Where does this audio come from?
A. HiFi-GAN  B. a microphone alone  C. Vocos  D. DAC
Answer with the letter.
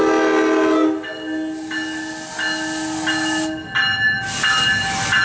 B